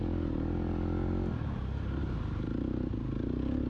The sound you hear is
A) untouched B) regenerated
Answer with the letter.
A